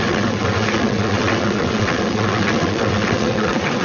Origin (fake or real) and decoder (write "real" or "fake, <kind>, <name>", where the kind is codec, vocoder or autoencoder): fake, vocoder, WaveNeXt